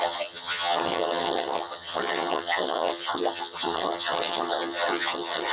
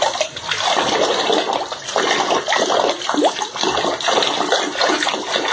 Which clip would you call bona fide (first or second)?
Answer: second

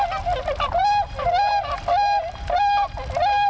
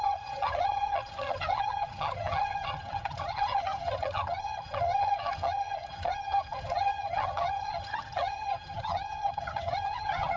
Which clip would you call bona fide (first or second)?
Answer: first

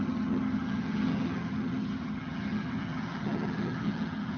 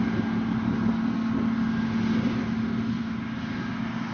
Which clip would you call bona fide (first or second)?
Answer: second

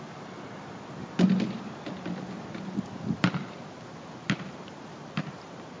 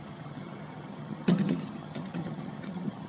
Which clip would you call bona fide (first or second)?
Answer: first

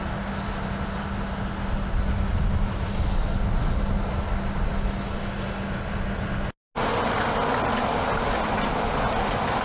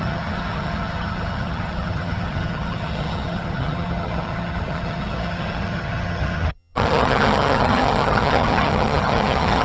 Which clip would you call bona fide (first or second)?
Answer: first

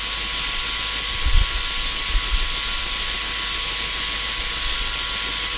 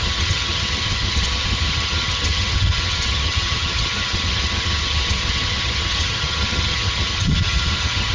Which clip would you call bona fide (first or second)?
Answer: first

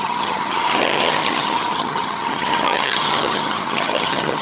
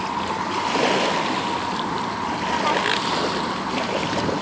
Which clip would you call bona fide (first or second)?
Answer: second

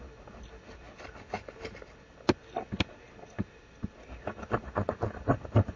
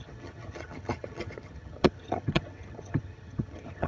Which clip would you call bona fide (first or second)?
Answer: first